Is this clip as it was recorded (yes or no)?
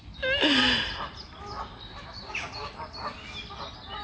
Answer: yes